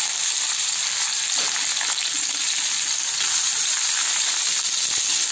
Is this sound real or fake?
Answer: real